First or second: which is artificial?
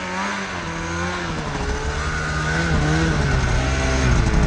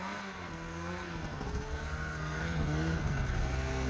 second